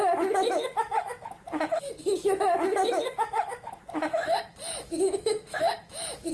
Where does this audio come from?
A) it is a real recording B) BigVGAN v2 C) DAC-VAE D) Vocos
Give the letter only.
C